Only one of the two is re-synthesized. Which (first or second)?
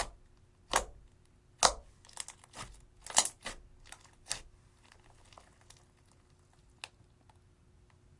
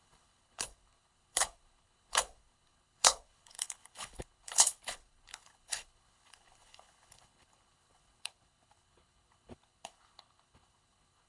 second